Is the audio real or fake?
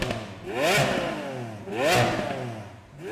real